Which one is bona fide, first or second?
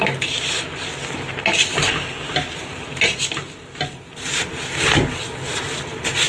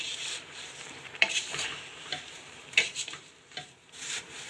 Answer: first